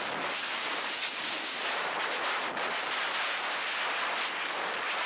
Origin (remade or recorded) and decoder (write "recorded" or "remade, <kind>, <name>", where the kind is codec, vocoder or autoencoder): recorded